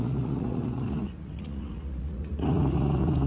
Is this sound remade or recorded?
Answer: remade